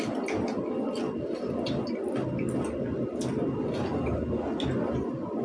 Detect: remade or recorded recorded